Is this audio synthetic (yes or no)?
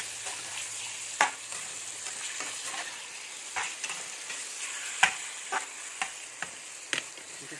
no